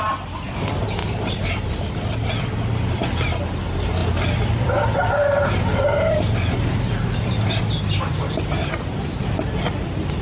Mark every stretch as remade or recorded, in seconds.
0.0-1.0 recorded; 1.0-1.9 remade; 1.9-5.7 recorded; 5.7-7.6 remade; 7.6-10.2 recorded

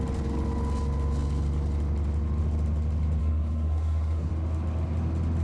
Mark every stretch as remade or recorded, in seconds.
0.0-3.2 recorded; 3.2-4.3 remade; 4.3-5.4 recorded